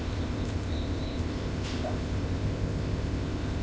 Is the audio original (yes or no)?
no